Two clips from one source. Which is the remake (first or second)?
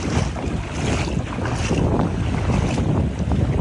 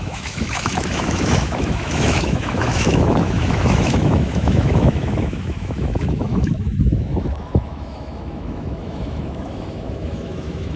second